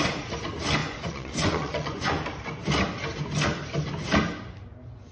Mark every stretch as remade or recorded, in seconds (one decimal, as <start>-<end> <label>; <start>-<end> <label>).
0.0-0.8 recorded; 0.8-2.1 remade; 2.1-5.1 recorded